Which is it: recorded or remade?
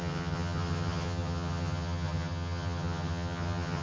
remade